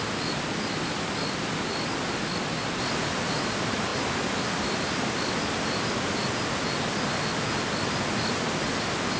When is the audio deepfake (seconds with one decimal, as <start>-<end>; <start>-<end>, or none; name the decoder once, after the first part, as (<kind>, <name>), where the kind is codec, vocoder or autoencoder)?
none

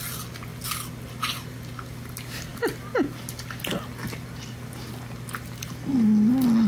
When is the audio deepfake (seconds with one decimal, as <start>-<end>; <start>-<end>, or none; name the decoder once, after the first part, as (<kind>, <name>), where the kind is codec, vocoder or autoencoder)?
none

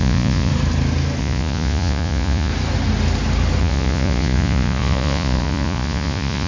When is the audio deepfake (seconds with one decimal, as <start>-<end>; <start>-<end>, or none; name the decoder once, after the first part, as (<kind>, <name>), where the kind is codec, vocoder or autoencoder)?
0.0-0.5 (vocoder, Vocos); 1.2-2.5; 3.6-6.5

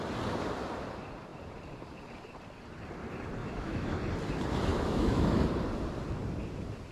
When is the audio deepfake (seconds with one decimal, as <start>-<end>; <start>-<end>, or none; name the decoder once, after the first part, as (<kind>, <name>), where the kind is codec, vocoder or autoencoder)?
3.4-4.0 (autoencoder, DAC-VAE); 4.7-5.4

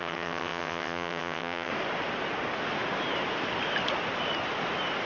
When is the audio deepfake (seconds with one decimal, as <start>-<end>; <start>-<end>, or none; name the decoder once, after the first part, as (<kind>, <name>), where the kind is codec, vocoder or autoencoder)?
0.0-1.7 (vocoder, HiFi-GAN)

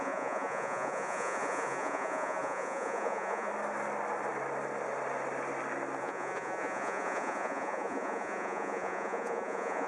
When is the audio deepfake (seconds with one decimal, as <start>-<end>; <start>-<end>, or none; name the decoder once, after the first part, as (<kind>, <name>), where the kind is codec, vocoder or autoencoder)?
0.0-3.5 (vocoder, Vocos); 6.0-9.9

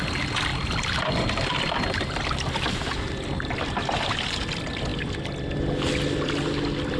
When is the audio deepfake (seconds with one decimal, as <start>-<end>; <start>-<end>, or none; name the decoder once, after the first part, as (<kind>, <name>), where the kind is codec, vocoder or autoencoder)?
none

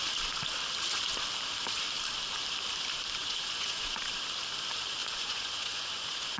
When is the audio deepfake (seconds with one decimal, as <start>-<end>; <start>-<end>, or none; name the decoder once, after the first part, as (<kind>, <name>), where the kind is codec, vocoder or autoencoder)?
3.2-4.0 (vocoder, Vocos); 5.0-6.4